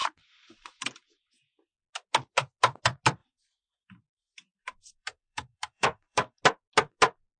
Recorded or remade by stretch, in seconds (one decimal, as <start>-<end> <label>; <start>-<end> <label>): 0.0-1.5 remade; 1.5-3.2 recorded; 3.2-6.4 remade; 6.4-7.4 recorded